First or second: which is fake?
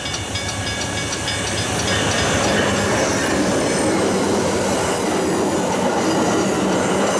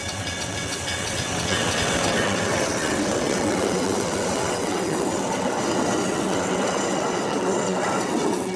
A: second